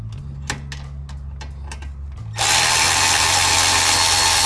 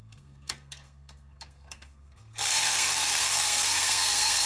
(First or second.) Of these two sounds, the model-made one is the second